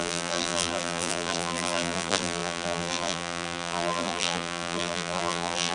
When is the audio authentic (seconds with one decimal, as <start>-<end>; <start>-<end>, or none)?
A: none